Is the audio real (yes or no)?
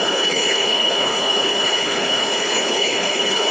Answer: no